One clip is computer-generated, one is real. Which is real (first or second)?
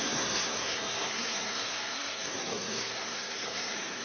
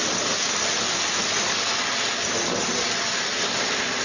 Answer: second